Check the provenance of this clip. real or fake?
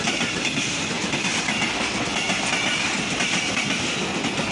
real